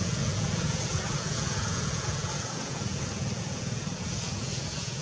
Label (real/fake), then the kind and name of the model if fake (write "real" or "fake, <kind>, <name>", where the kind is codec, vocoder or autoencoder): fake, vocoder, Vocos